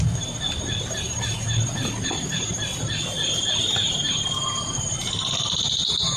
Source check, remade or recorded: recorded